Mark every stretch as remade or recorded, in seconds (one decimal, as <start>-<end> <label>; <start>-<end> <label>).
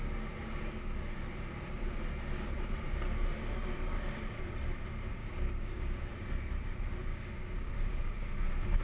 0.0-5.2 recorded; 5.2-6.1 remade; 6.1-7.1 recorded; 7.1-8.8 remade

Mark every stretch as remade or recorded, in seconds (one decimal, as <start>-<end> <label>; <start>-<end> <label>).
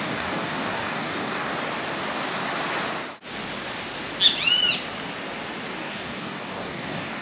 0.0-1.5 remade; 1.5-5.8 recorded; 5.8-7.2 remade